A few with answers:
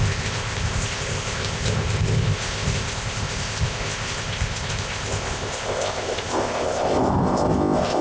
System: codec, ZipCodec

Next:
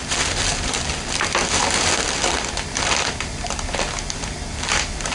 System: vocoder, BigVGAN v2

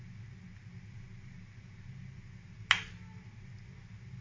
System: none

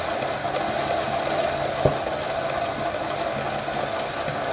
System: none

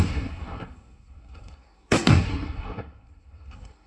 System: codec, SNAC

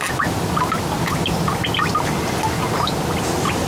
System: none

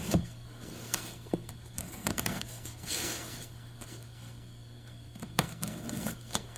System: codec, SNAC